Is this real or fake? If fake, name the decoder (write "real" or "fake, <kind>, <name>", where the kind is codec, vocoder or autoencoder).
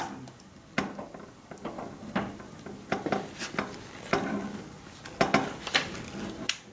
real